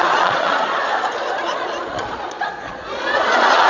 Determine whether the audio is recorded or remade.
remade